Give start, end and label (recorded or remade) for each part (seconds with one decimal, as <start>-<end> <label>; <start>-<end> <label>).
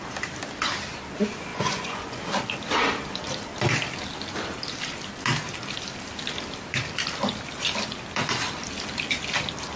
0.0-1.5 recorded; 1.5-2.2 remade; 2.2-9.8 recorded